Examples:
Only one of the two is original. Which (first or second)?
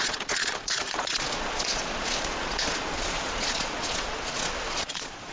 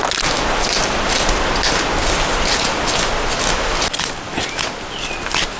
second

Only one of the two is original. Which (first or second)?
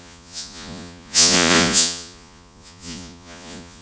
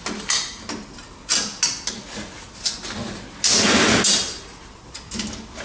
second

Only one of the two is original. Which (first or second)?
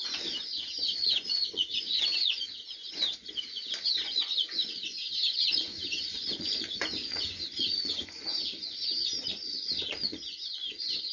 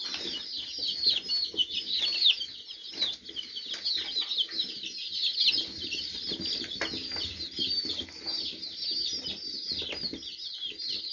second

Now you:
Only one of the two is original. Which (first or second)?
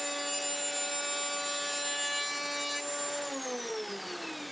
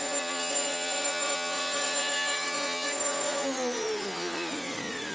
first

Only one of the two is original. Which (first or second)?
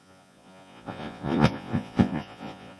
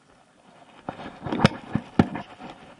second